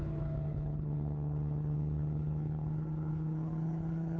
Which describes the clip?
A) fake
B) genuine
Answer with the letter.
A